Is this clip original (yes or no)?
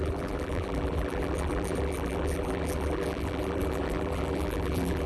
no